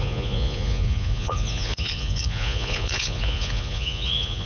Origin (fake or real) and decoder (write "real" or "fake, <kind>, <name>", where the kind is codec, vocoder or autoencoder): fake, vocoder, Vocos